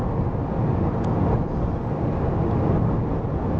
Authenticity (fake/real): real